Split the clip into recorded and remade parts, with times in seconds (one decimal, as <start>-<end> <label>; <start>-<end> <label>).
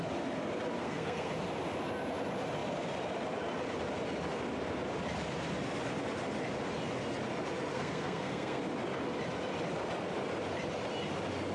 0.0-0.8 recorded; 0.8-1.3 remade; 1.3-7.7 recorded; 7.7-8.6 remade; 8.6-11.5 recorded